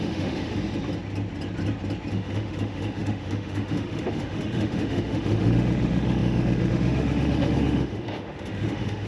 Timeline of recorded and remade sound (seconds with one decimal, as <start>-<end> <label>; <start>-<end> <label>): 0.0-0.5 remade; 0.5-2.1 recorded; 2.1-9.1 remade

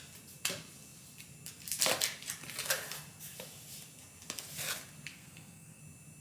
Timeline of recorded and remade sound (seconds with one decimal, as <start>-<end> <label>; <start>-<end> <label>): 0.0-5.1 recorded; 5.1-5.8 remade; 5.8-6.2 recorded

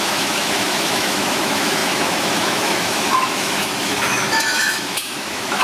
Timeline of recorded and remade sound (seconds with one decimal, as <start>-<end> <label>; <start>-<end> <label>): 0.0-5.6 remade

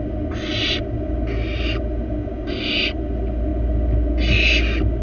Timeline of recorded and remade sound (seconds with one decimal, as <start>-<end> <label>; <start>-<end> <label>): 0.0-5.0 recorded

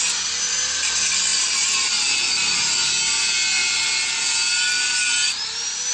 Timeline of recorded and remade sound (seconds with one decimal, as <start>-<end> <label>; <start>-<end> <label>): 0.0-5.9 recorded

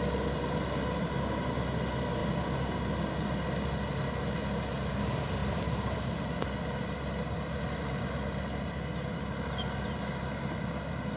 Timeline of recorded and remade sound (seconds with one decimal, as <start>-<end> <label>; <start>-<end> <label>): 0.0-11.2 recorded

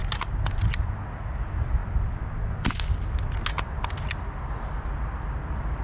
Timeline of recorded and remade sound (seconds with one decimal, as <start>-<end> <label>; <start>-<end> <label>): 0.0-5.8 recorded

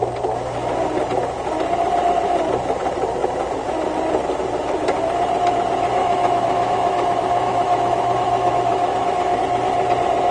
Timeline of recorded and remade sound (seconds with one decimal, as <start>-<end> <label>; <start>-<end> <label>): 0.0-6.0 recorded; 6.0-9.4 remade; 9.4-10.3 recorded